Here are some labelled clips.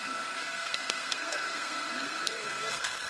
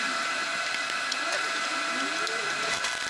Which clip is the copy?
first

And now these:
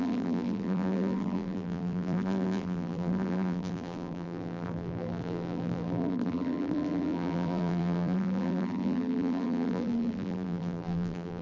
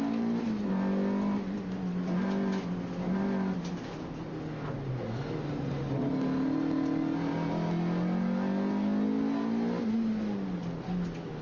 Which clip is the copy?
first